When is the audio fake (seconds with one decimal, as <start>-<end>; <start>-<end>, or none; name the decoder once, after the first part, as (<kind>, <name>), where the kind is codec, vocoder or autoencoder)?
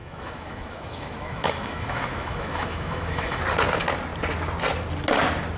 0.0-3.4 (autoencoder, DAC-VAE)